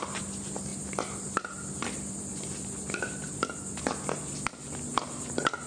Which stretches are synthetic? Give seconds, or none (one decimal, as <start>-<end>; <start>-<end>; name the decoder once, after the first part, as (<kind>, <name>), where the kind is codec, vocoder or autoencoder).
none